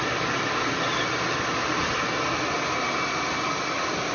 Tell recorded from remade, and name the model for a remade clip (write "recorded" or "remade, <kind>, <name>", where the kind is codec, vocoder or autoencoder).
recorded